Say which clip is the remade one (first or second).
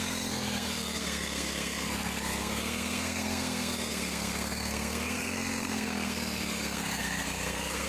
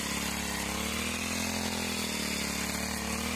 first